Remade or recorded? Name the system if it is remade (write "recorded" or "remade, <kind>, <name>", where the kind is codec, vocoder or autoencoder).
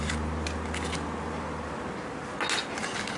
recorded